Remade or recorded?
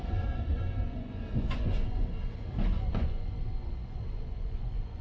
remade